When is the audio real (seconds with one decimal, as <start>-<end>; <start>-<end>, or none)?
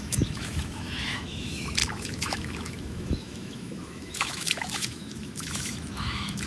none